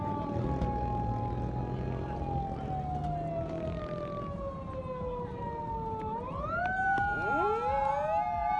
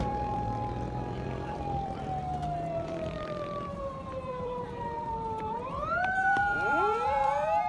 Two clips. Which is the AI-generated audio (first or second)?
second